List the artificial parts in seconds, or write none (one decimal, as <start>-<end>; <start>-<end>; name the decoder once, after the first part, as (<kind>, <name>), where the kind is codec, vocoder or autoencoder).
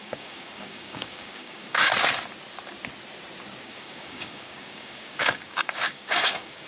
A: 0.0-1.9 (codec, DAC); 3.6-6.7